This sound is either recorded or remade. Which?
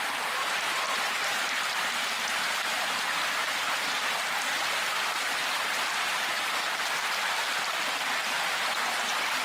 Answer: recorded